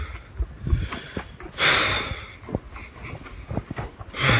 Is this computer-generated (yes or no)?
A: no